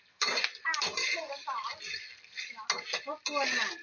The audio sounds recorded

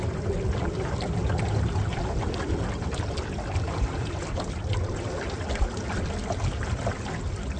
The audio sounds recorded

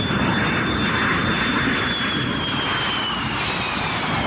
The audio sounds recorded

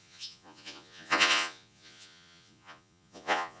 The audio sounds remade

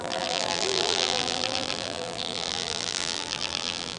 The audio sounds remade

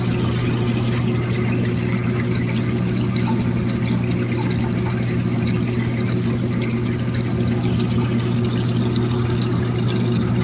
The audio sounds recorded